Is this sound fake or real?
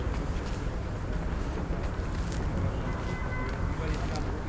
real